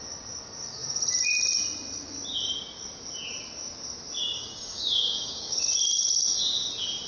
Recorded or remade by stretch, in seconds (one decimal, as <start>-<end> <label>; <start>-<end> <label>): 0.0-4.2 recorded; 4.2-5.7 remade; 5.7-7.1 recorded